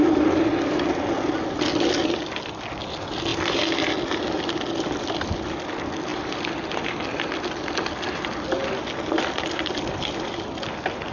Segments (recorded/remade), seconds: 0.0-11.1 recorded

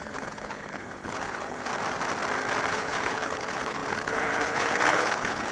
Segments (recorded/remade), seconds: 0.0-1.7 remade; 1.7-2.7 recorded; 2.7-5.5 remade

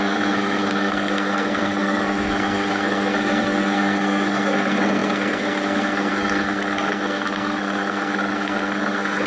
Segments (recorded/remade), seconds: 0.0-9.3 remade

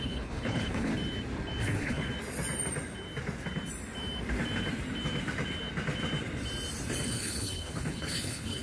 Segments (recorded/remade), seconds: 0.0-0.9 remade; 0.9-1.6 recorded; 1.6-2.1 remade; 2.1-7.0 recorded; 7.0-8.6 remade

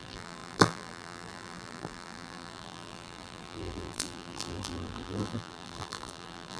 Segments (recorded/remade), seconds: 0.0-6.6 remade